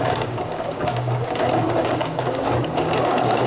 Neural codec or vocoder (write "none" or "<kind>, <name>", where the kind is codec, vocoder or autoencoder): codec, DAC